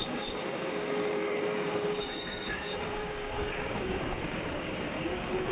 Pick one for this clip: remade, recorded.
remade